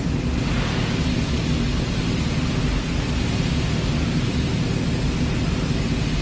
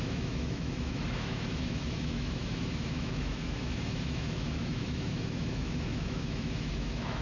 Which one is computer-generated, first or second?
second